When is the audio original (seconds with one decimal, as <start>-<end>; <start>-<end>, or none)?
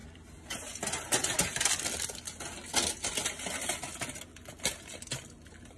1.2-5.8